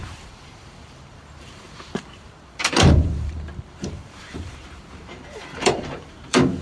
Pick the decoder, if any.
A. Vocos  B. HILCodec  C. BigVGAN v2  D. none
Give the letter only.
C